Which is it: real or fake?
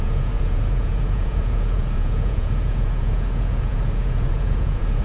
fake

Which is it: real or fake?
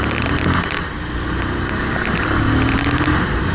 real